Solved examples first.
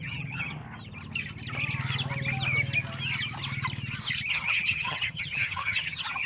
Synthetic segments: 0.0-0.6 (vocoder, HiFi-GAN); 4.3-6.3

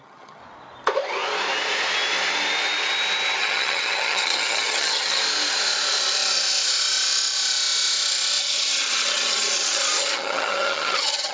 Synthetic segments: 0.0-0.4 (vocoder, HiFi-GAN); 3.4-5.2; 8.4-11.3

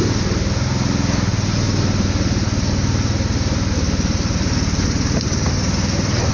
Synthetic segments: none

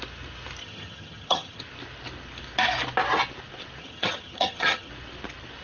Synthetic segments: 0.6-1.6 (vocoder, HiFi-GAN); 3.8-4.9

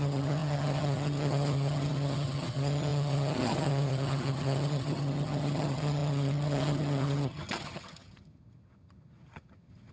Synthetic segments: 0.0-9.9 (vocoder, HiFi-GAN)

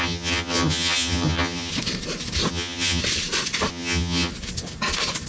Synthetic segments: 0.0-1.7 (vocoder, HiFi-GAN); 2.5-3.0; 3.7-4.3